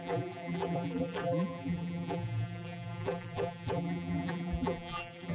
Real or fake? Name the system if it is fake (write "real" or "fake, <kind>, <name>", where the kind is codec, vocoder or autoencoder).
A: fake, vocoder, BigVGAN v2